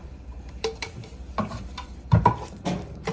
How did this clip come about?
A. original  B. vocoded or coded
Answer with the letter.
B